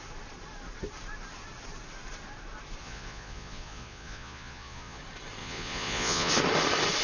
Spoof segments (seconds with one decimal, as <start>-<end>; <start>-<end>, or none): 2.8-5.0; 5.4-6.3